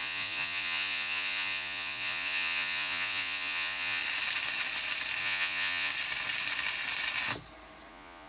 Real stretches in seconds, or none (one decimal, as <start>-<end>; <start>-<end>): 4.0-5.2; 5.9-7.9